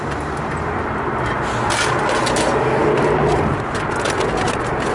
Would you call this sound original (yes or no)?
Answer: yes